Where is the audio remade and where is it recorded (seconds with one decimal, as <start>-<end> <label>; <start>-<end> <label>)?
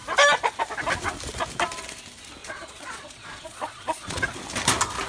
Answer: 0.0-2.4 recorded; 2.4-4.2 remade; 4.2-5.1 recorded